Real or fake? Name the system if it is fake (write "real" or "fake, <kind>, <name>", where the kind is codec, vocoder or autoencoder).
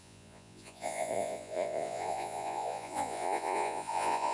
fake, vocoder, Vocos